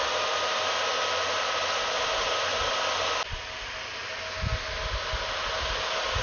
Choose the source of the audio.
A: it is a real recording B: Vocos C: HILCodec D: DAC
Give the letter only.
A